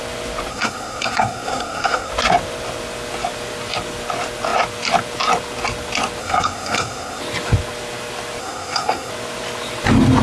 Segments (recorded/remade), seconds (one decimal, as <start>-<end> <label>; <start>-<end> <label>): 0.0-0.5 recorded; 0.5-2.1 remade; 2.1-6.2 recorded; 6.2-7.2 remade; 7.2-8.4 recorded; 8.4-9.1 remade; 9.1-10.2 recorded